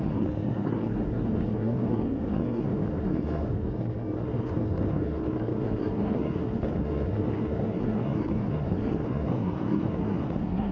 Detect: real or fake fake